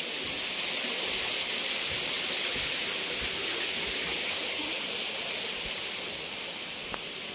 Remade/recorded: recorded